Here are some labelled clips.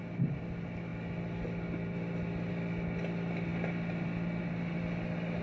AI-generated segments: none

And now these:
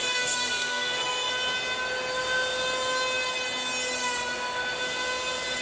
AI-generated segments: 0.0-1.3 (codec, SNAC)

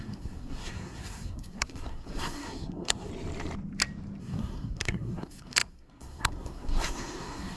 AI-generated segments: 0.0-3.1 (codec, SNAC); 4.2-7.6

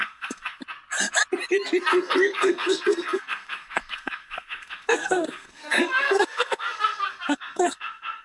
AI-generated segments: 0.0-0.6 (codec, SNAC); 1.9-8.2

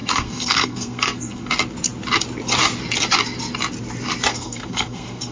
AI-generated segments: 0.0-1.5 (codec, SNAC); 4.3-5.3

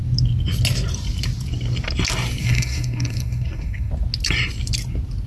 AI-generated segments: 2.4-3.9 (codec, SNAC)